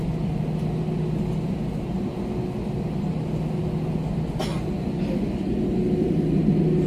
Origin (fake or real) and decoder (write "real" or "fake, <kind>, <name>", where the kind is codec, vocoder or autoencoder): real